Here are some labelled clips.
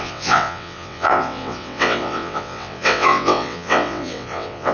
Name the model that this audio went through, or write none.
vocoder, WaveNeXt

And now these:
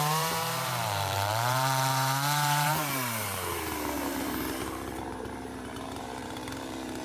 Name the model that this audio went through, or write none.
vocoder, BigVGAN v2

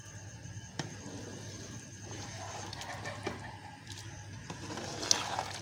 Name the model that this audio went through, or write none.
none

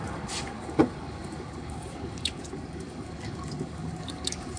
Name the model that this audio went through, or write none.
codec, DAC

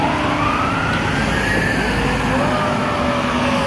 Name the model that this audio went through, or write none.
none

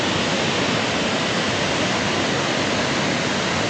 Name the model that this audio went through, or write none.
none